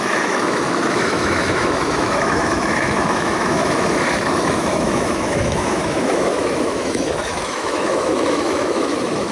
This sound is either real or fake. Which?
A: fake